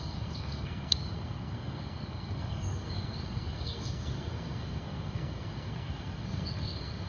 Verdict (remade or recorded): remade